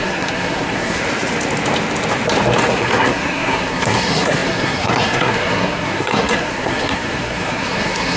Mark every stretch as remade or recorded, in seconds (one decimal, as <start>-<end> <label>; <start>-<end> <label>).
0.0-1.0 remade; 1.0-2.7 recorded; 2.7-8.2 remade